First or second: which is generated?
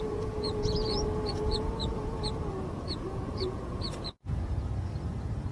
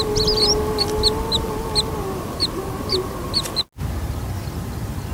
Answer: first